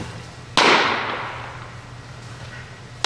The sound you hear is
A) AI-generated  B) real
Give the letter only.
B